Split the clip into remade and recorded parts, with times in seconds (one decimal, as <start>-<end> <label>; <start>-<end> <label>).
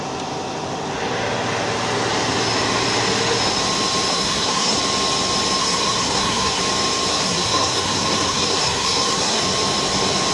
0.0-4.1 recorded; 4.1-4.8 remade; 4.8-5.6 recorded; 5.6-6.6 remade; 6.6-7.1 recorded; 7.1-9.4 remade; 9.4-10.3 recorded